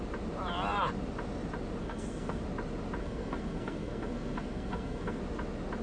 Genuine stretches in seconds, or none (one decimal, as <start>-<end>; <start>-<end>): 0.0-1.8; 2.4-3.0; 5.2-5.8